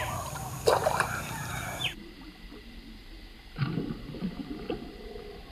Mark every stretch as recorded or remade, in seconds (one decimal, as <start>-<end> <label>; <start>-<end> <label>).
0.0-4.4 remade; 4.4-5.0 recorded; 5.0-5.5 remade